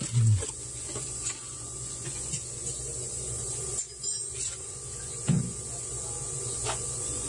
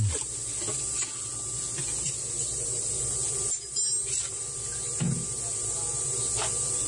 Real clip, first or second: second